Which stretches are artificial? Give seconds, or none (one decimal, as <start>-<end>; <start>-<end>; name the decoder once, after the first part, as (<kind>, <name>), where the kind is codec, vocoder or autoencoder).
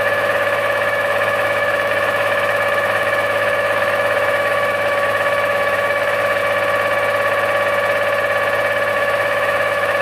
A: 0.0-6.4 (autoencoder, DAC-VAE); 8.9-10.0